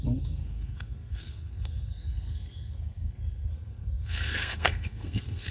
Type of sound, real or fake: fake